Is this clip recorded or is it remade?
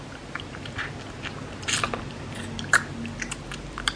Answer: recorded